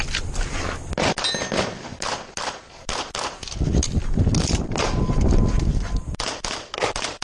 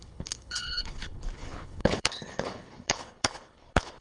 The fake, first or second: second